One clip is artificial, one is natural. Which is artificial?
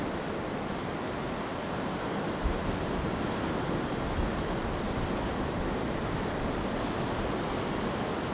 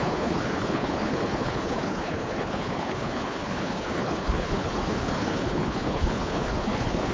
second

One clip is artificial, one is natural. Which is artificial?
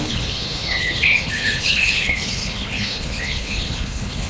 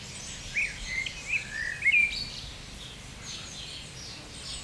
first